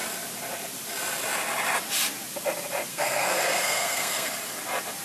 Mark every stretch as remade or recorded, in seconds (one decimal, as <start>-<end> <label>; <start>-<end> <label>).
0.0-2.9 recorded; 2.9-4.3 remade; 4.3-5.0 recorded